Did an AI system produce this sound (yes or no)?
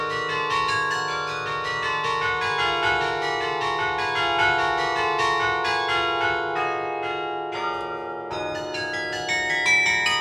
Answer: no